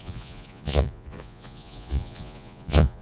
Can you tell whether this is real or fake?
fake